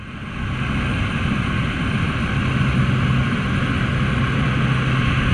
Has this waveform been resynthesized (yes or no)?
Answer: no